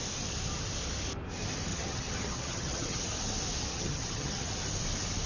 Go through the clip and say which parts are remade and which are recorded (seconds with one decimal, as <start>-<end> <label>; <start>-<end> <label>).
0.0-1.7 recorded; 1.7-3.0 remade; 3.0-3.7 recorded; 3.7-4.5 remade; 4.5-5.3 recorded